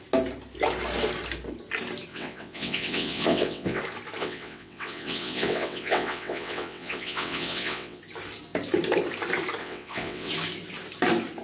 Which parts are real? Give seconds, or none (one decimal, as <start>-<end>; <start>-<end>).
0.0-2.1; 3.8-4.2; 8.0-9.6; 10.3-11.4